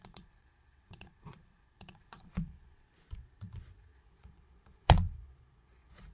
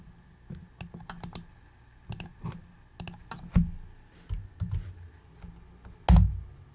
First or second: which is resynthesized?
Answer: first